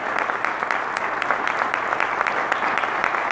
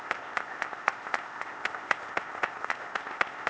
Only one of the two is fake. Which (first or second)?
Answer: second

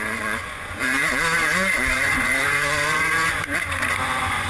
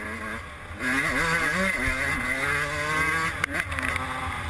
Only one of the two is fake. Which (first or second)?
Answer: first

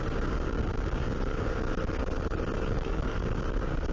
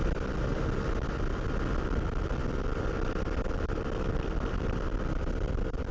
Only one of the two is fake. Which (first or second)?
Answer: first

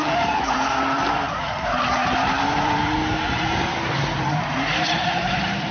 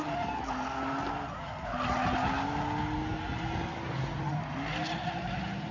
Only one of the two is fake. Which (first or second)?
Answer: first